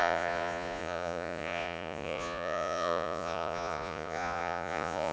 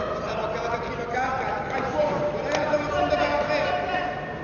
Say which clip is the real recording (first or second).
second